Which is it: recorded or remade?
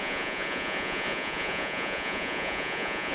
remade